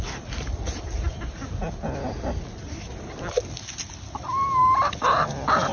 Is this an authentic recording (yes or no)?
yes